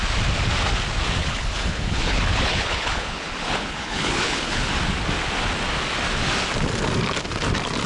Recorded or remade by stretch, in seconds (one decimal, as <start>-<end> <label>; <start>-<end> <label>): 0.0-1.2 recorded; 1.2-4.7 remade; 4.7-7.9 recorded